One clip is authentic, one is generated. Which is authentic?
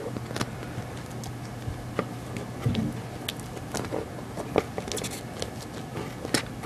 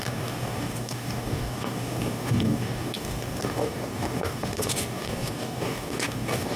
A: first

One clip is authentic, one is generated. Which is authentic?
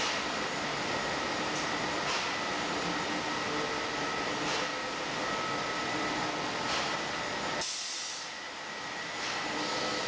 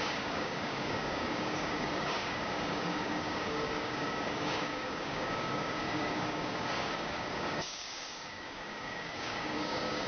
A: first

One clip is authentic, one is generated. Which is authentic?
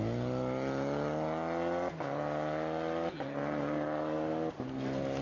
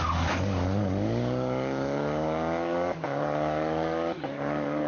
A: first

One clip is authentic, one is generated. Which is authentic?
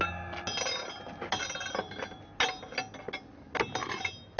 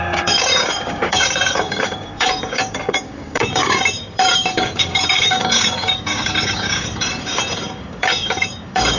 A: first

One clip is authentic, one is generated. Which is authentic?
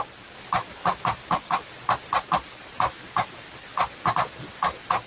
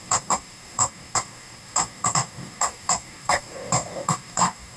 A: first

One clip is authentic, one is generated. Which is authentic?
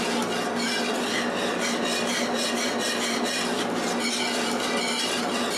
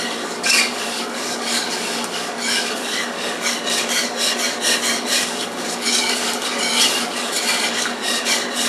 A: first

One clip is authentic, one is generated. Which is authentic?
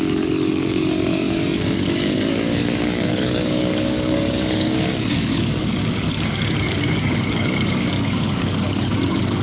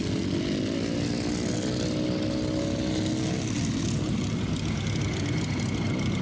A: second